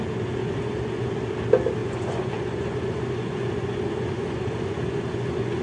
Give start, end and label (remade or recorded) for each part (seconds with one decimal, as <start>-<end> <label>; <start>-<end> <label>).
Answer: 0.0-0.4 recorded; 0.4-1.1 remade; 1.1-1.8 recorded; 1.8-5.6 remade